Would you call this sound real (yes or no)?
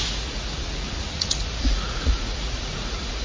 no